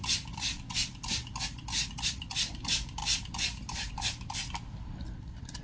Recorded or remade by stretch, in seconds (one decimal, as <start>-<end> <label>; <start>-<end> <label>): 0.0-3.0 remade; 3.0-3.9 recorded; 3.9-5.6 remade

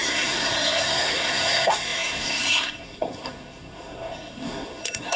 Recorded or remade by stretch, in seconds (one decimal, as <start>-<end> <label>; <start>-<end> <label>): 0.0-5.2 remade

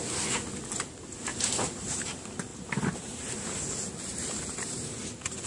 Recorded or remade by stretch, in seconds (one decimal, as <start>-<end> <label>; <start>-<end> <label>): 0.0-1.3 recorded; 1.3-2.0 remade; 2.0-2.5 recorded; 2.5-3.6 remade; 3.6-4.1 recorded; 4.1-5.0 remade; 5.0-5.5 recorded

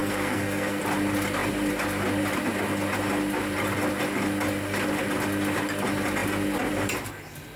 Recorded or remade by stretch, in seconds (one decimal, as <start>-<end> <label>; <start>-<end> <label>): 0.0-0.8 remade; 0.8-7.6 recorded

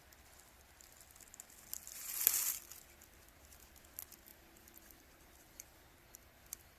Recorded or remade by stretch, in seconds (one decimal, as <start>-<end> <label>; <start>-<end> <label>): 0.0-4.3 recorded; 4.3-6.8 remade

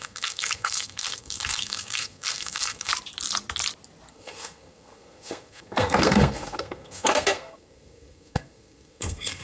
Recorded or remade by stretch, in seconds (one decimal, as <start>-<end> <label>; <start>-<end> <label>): 0.0-2.9 remade; 2.9-4.1 recorded; 4.1-9.4 remade

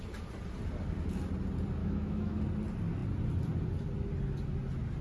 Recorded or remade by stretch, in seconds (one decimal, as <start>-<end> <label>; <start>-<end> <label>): 0.0-1.8 recorded; 1.8-2.4 remade; 2.4-5.0 recorded